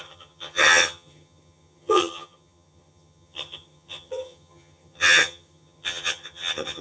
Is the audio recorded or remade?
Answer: remade